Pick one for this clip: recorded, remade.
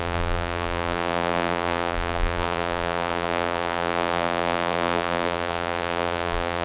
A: remade